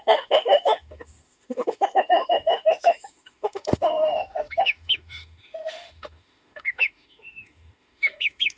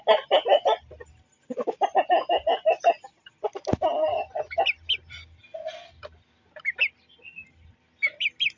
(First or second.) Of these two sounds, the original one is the second